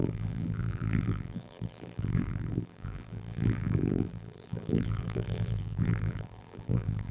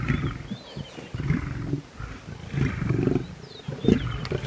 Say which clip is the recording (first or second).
second